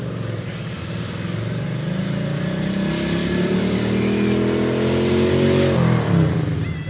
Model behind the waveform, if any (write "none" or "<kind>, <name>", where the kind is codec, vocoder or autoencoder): none